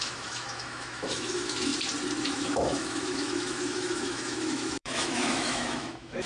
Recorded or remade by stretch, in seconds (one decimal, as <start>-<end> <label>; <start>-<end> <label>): 0.0-1.7 remade; 1.7-2.2 recorded; 2.2-6.3 remade